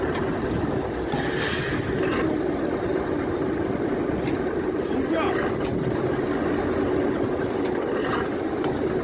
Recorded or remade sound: recorded